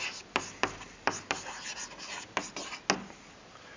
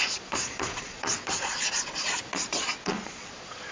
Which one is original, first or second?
first